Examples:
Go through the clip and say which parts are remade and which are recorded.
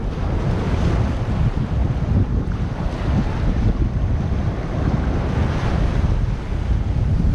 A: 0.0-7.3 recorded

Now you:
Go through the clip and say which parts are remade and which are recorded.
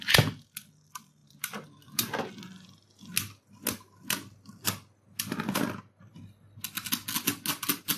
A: 0.0-1.2 recorded; 1.2-2.3 remade; 2.3-8.0 recorded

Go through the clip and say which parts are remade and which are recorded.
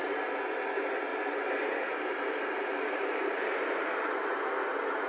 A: 0.0-1.1 recorded; 1.1-4.1 remade; 4.1-5.1 recorded